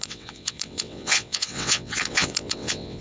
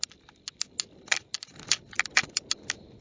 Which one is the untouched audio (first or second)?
second